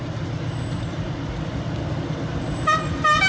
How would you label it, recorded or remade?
recorded